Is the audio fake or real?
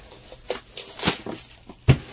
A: real